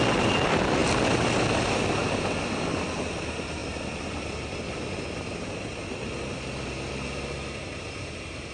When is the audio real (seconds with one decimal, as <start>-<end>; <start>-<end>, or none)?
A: 0.0-8.5